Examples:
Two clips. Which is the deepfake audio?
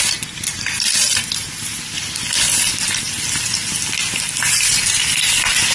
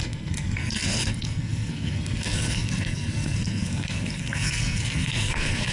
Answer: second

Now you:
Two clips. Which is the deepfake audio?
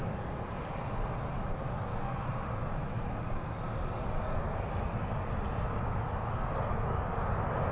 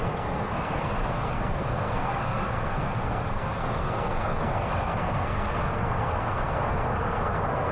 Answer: second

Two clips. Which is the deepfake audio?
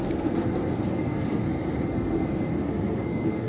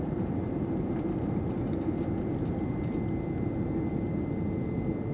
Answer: first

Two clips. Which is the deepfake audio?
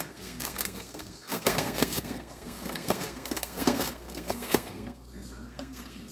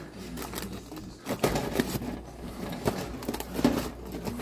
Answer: first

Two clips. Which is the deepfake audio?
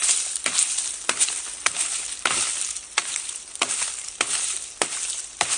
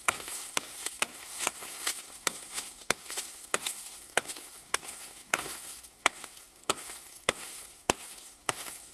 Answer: second